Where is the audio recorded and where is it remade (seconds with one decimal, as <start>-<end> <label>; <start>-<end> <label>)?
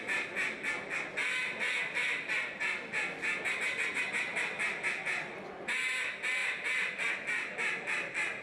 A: 0.0-4.3 recorded; 4.3-5.0 remade; 5.0-6.4 recorded; 6.4-7.1 remade; 7.1-8.4 recorded